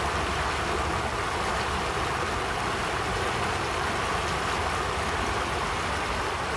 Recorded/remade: recorded